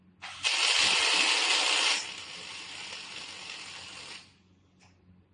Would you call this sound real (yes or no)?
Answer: yes